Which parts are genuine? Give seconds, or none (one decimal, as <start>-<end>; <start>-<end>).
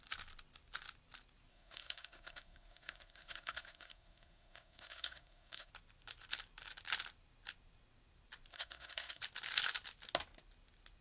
0.0-1.5; 5.7-8.5; 9.2-11.0